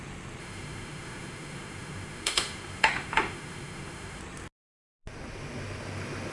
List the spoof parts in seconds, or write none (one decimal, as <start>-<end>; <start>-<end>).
0.4-4.2